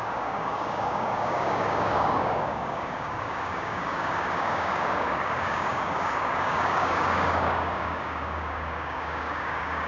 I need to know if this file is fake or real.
fake